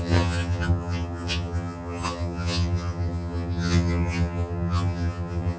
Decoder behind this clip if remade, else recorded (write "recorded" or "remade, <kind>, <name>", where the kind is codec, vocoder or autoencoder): remade, vocoder, HiFi-GAN